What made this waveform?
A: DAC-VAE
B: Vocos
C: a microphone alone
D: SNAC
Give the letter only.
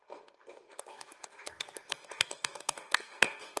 D